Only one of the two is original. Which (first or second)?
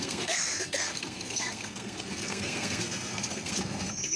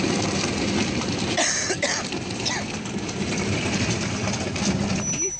second